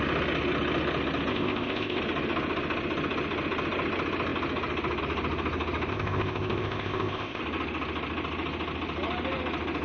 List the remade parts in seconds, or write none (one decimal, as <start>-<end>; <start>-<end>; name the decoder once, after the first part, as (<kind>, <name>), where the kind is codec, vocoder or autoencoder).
1.3-2.0 (codec, ZipCodec); 5.9-7.4